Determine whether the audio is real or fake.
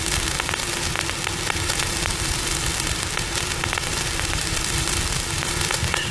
real